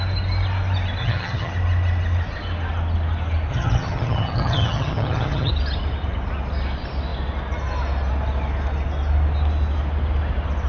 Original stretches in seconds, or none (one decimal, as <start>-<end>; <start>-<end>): 0.0-1.0; 1.5-3.5; 5.5-10.7